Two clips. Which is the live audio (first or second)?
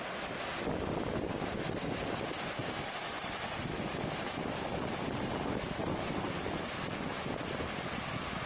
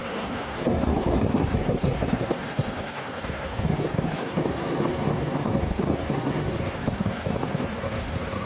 first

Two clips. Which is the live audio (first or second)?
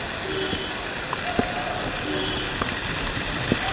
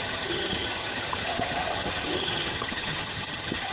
first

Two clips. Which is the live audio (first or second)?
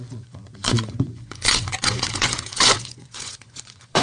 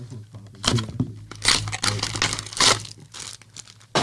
second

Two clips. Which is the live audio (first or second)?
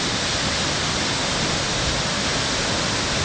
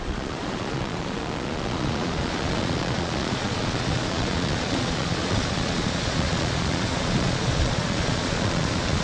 first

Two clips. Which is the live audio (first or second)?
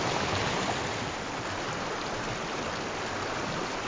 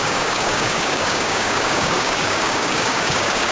first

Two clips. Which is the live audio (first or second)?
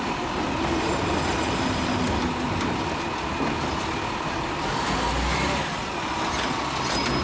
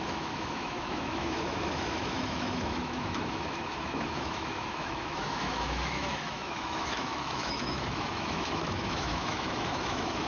first